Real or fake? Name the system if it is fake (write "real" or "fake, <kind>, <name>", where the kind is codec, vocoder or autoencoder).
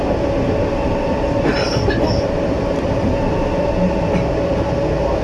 real